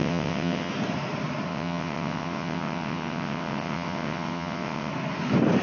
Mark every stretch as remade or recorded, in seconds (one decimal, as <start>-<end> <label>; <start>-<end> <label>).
0.0-0.7 remade; 0.7-1.5 recorded; 1.5-4.9 remade; 4.9-5.6 recorded